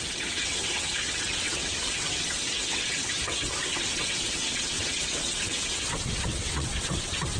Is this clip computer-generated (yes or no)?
yes